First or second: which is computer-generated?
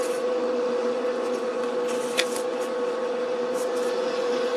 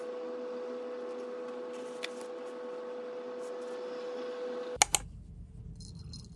first